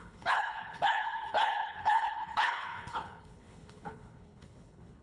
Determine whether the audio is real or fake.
fake